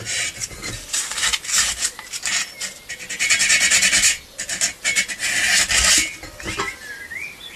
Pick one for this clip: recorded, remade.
recorded